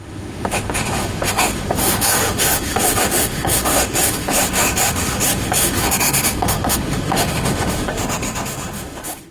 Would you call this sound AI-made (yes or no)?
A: yes